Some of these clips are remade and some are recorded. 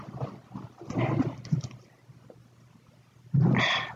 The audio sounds recorded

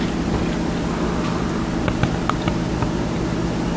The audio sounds recorded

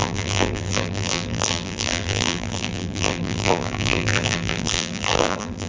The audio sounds remade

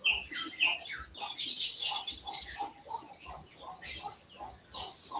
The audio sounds recorded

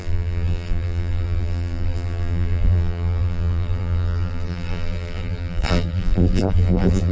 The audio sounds remade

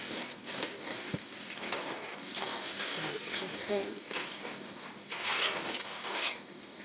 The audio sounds remade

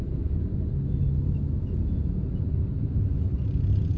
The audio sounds recorded